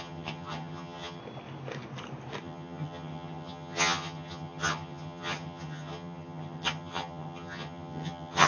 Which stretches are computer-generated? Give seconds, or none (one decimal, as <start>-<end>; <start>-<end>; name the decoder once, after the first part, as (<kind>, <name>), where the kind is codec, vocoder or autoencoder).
0.0-1.2 (vocoder, HiFi-GAN); 2.4-8.5